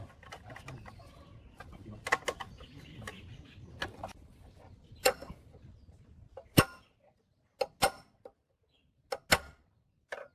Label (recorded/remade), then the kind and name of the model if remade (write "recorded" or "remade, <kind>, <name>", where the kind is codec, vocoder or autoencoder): recorded